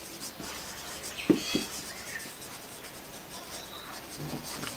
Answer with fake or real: real